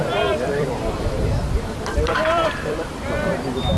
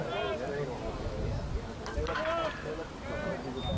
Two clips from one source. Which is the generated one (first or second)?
first